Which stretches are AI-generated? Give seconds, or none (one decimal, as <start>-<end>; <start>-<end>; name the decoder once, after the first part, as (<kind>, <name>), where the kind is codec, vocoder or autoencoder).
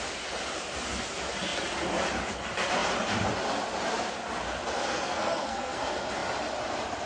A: 4.8-5.8 (codec, SNAC)